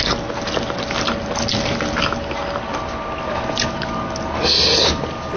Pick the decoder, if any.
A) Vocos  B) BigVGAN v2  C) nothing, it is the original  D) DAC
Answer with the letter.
C